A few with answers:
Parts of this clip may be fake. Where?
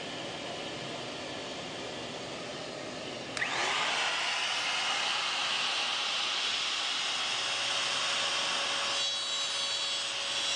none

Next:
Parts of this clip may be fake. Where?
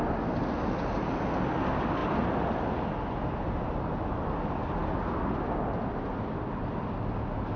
none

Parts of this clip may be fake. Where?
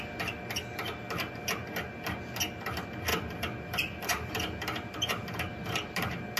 3.1-4.3 (vocoder, BigVGAN v2)